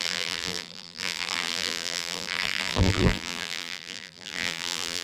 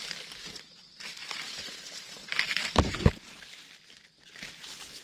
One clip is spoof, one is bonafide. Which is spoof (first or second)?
first